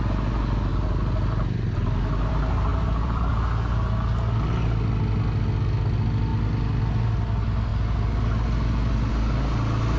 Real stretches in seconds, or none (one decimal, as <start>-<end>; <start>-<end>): 0.0-0.7; 2.3-2.7; 3.3-10.0